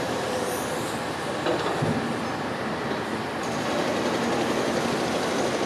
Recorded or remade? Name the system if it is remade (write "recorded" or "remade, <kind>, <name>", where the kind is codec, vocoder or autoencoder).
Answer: remade, vocoder, BigVGAN v2